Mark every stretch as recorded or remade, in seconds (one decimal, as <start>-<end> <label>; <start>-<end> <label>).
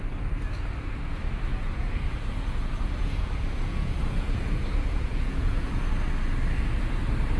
0.0-1.5 recorded; 1.5-5.9 remade; 5.9-7.4 recorded